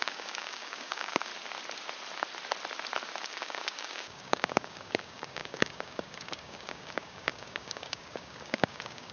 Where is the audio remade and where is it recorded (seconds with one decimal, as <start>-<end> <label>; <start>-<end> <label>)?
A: 0.0-1.3 remade; 1.3-3.2 recorded; 3.2-9.1 remade